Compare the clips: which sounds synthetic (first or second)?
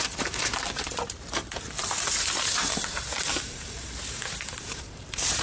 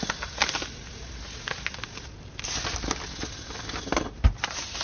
first